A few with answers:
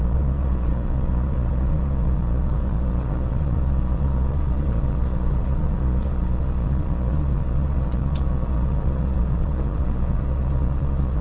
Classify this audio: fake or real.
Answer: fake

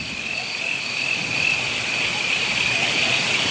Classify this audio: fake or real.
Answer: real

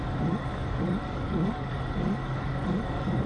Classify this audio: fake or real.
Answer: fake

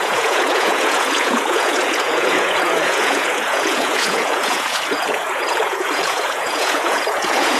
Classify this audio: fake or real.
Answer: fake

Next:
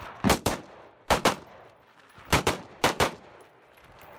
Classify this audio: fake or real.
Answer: fake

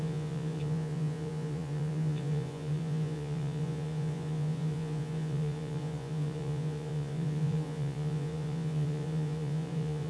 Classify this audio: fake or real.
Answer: fake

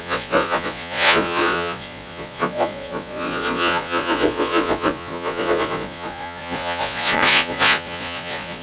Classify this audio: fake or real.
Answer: fake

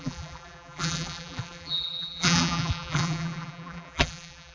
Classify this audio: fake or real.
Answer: fake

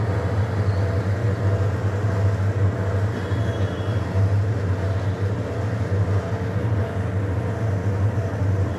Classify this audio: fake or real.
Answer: real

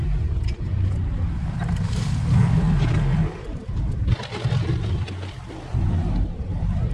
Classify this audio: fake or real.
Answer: fake